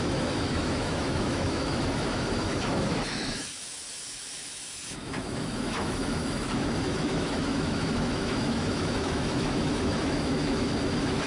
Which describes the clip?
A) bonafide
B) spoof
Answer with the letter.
B